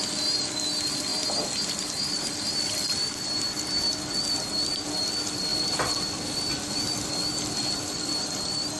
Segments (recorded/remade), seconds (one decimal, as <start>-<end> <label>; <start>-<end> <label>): 0.0-8.8 recorded